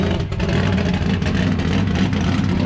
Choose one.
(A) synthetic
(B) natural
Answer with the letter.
B